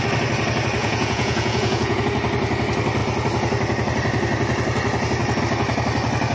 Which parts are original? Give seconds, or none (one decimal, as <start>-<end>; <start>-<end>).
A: 0.0-0.8; 2.0-6.3